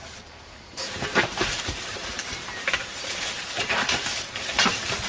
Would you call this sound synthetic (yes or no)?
yes